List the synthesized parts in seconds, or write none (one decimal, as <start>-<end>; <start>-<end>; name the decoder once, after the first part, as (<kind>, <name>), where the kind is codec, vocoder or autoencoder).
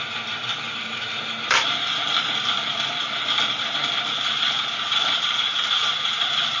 0.0-6.6 (vocoder, BigVGAN v2)